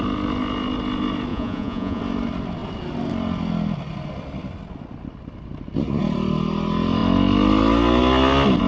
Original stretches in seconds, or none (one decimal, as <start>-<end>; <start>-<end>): 0.0-1.3; 2.0-8.7

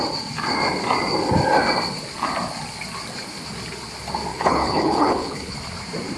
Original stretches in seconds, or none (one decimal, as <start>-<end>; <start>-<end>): 0.0-4.3; 5.6-6.2

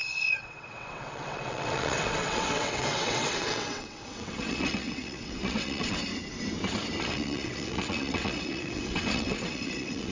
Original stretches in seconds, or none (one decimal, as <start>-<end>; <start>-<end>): 6.1-7.0

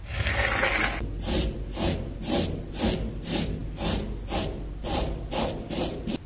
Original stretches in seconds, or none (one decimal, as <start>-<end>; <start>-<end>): 0.0-6.3

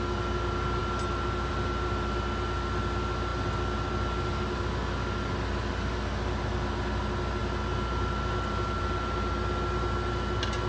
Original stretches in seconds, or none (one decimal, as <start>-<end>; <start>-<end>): 0.0-10.7